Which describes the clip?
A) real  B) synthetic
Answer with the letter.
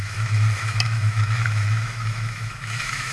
B